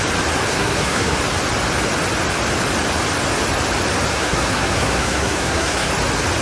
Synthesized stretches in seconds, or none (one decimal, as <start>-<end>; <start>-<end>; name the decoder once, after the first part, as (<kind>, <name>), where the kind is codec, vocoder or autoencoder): 0.5-1.2 (codec, SNAC); 4.1-5.9